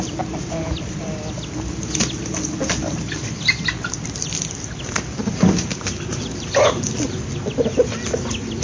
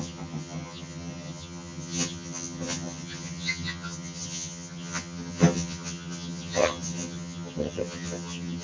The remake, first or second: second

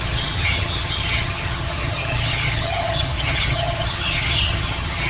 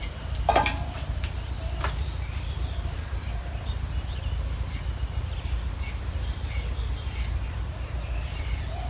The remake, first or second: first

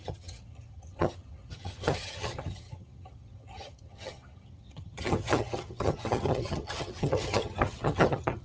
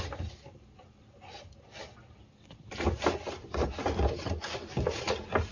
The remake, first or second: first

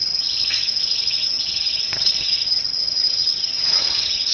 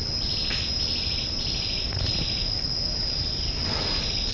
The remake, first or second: first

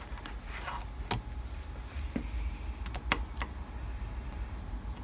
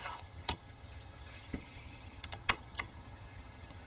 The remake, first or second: second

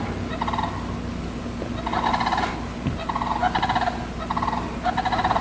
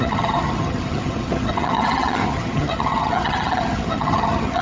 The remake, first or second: second